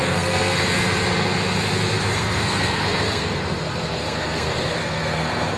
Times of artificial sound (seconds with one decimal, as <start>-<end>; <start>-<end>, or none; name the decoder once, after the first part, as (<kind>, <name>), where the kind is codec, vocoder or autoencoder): 0.0-0.6 (codec, SNAC); 2.1-5.6